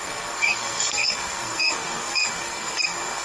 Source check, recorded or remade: remade